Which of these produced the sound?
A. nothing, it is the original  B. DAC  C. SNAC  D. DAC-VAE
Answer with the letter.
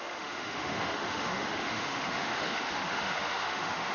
D